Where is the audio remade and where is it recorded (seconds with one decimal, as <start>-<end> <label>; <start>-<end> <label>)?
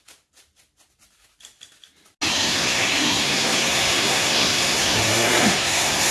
0.0-2.3 recorded; 2.3-6.1 remade